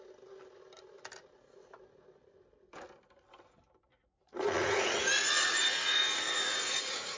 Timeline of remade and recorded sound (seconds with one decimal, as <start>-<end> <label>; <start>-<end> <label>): 0.0-3.9 recorded; 3.9-7.2 remade